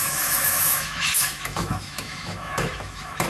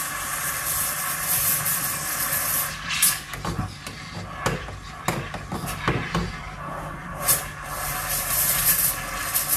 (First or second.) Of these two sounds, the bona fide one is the second